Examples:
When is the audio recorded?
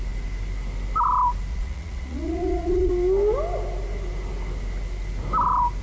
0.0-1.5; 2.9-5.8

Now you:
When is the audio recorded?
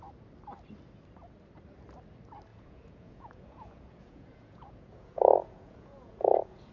0.0-2.5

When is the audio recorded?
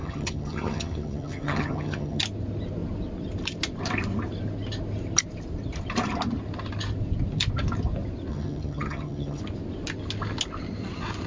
2.2-8.3; 9.4-11.3